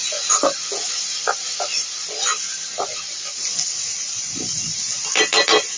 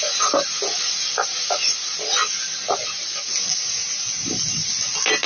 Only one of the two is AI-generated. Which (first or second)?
first